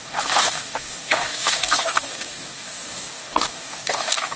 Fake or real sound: fake